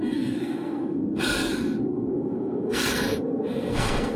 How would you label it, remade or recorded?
remade